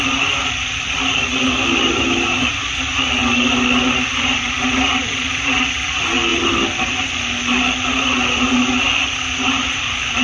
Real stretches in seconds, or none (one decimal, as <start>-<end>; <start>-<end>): 0.0-9.0